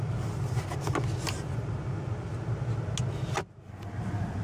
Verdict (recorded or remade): recorded